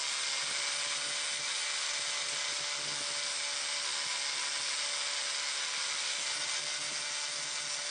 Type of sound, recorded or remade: recorded